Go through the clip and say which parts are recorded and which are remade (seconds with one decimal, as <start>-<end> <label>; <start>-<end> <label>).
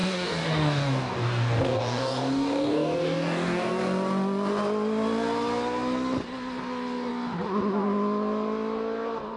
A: 0.0-3.7 remade; 3.7-9.4 recorded